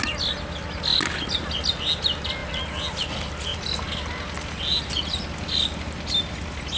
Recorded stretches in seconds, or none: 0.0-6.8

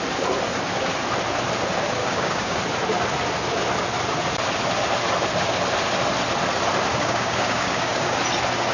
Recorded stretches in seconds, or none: 0.0-2.0; 2.6-6.9; 8.2-8.7

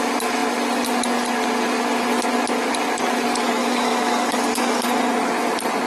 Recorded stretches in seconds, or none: 0.0-3.6; 4.8-5.9

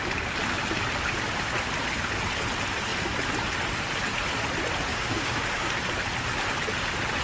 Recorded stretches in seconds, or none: 0.0-4.9; 5.7-7.2

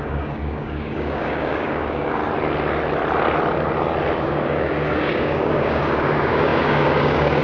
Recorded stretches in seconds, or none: 2.2-4.2

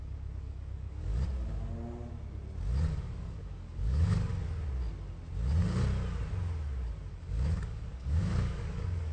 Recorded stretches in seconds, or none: 1.1-2.9; 4.3-7.1

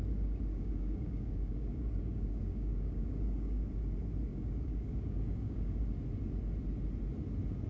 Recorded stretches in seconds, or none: 0.0-0.5; 3.6-4.3; 5.8-7.7

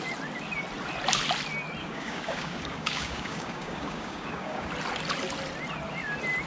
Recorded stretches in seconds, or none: 0.0-1.8; 4.7-6.5